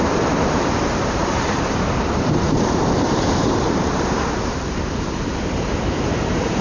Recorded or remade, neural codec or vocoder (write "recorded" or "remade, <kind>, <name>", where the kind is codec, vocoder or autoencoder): remade, vocoder, BigVGAN v2